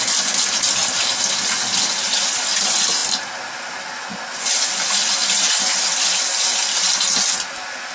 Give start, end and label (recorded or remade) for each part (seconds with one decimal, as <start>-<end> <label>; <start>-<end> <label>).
0.0-7.9 recorded